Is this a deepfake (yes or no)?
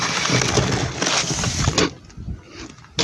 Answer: no